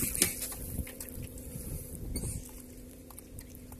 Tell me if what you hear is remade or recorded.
recorded